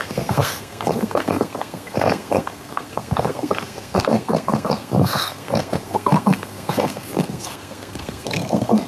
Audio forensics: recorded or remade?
remade